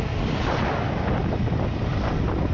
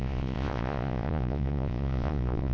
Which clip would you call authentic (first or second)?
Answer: first